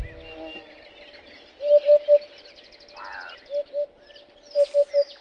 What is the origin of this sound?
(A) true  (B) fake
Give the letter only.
A